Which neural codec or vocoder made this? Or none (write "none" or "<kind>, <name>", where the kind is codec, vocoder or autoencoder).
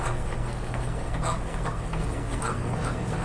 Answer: codec, SNAC